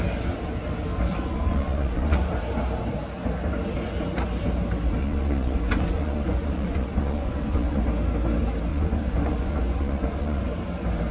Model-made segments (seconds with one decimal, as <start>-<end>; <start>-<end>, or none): 1.1-2.4; 5.0-7.8; 8.7-10.4